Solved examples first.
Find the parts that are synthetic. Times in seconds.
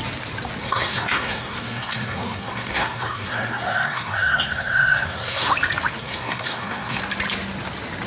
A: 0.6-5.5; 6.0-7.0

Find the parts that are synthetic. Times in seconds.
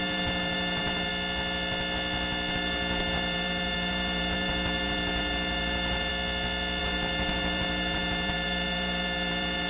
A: 0.0-1.1; 2.5-6.1; 6.8-9.7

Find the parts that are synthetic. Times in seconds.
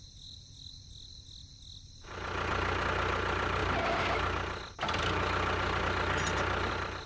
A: none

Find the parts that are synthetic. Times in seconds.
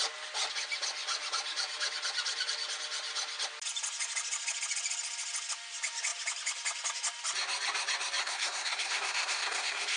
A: 8.2-10.0